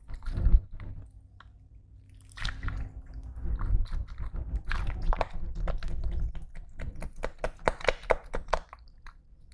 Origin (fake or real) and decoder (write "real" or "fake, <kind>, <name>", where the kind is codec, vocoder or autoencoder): real